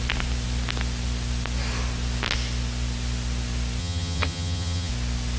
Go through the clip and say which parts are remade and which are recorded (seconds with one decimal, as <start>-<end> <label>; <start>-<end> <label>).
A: 0.0-3.8 recorded; 3.8-4.9 remade; 4.9-5.4 recorded